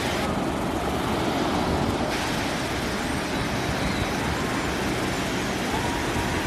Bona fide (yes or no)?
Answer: yes